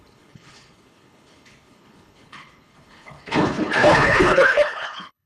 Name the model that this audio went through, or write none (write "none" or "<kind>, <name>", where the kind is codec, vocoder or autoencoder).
codec, HILCodec